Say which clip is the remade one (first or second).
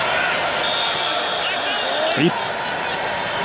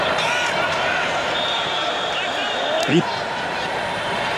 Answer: second